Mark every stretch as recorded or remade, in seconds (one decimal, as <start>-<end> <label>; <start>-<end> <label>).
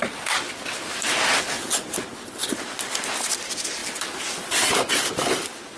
0.0-5.8 recorded